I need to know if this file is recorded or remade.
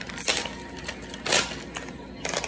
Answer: recorded